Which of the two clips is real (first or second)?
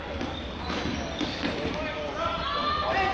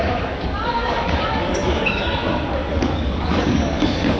first